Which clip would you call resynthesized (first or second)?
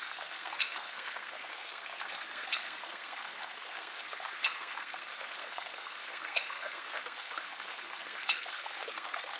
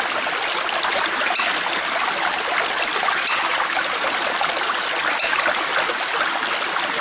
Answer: first